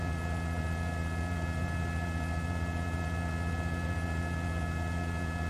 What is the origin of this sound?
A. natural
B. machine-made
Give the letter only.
A